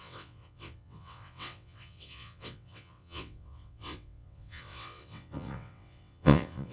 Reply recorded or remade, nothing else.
remade